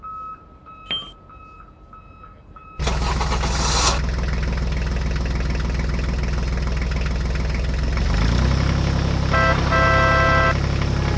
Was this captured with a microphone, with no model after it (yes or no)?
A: yes